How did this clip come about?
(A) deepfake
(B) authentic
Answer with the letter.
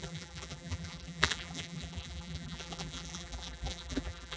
A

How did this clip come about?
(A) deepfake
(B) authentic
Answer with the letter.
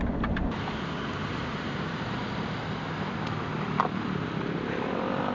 A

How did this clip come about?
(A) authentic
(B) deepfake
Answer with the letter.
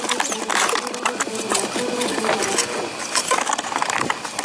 A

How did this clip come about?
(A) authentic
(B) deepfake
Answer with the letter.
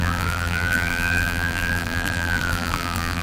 B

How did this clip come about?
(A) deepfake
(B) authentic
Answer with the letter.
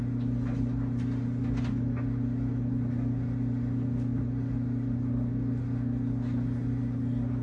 B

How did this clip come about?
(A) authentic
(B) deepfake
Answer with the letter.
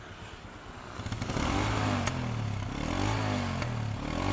A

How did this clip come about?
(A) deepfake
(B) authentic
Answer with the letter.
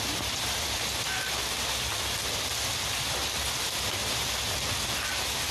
B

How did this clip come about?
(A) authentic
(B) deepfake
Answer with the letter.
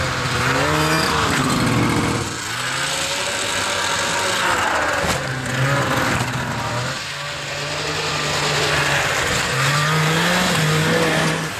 A